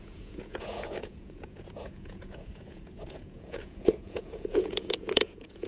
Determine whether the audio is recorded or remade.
remade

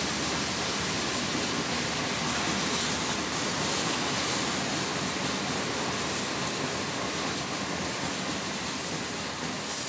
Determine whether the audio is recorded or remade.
recorded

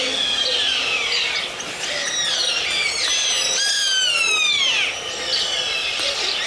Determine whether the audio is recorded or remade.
recorded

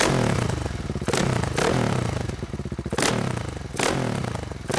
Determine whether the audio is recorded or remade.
recorded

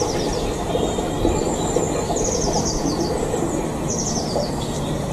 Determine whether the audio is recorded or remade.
remade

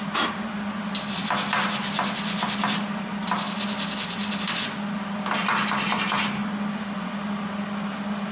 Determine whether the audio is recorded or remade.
recorded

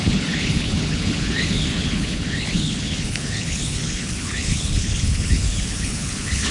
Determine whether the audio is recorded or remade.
remade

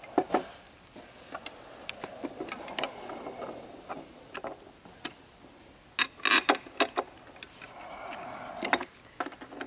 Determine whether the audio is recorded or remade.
recorded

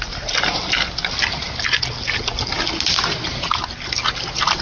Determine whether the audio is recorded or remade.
recorded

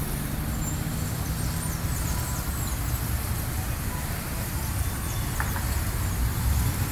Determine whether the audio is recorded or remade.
recorded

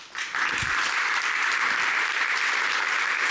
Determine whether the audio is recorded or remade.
remade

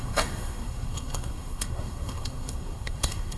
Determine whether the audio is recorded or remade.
remade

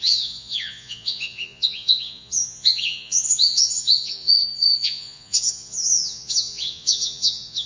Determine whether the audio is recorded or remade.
remade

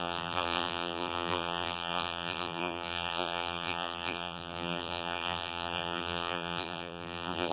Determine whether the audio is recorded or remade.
remade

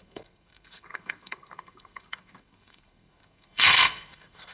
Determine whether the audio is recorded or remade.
remade